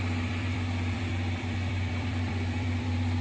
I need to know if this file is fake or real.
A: fake